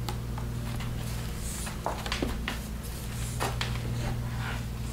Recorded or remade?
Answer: recorded